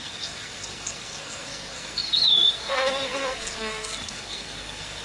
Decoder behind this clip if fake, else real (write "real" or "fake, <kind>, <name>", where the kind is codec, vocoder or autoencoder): fake, codec, SNAC